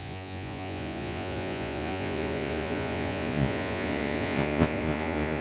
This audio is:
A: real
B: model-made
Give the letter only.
B